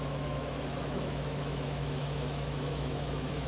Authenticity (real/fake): fake